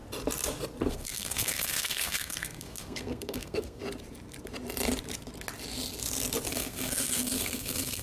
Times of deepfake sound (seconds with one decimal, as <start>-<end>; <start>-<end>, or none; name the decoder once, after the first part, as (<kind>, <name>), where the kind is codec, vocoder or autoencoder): 0.9-3.8 (codec, SNAC); 6.5-8.0